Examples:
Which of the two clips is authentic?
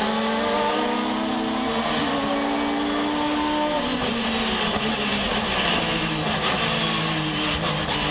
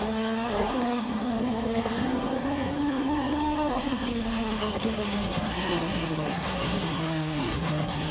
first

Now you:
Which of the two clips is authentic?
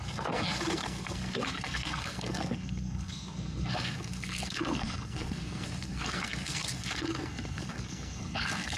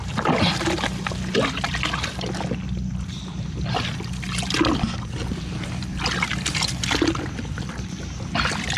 second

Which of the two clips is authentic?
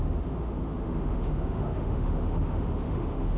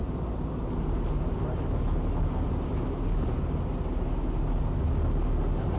second